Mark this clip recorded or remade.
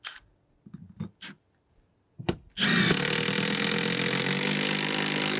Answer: recorded